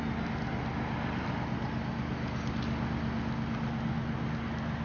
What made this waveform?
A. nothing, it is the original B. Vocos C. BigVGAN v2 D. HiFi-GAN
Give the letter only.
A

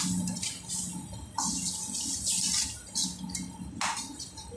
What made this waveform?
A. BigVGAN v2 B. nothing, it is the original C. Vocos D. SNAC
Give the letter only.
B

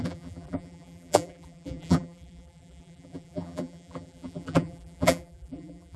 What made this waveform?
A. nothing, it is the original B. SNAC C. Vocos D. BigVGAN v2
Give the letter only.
D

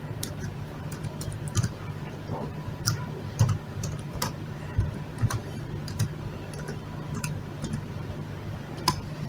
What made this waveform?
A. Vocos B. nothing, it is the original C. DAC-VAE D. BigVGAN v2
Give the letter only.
D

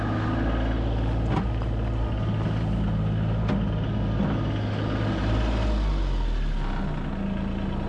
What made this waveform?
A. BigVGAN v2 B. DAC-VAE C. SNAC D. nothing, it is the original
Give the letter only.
D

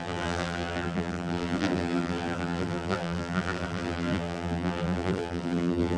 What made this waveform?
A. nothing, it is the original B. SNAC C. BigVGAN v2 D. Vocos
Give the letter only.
C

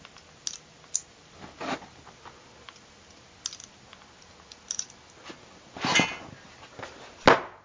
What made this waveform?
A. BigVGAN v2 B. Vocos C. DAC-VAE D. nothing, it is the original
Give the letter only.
D